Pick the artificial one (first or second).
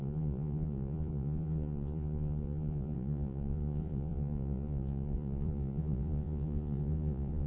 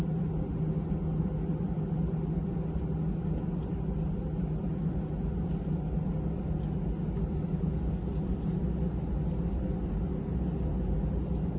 first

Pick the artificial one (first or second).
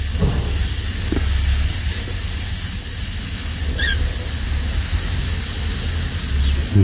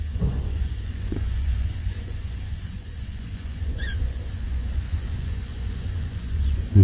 second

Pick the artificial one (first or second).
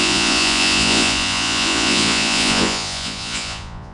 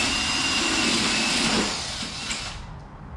first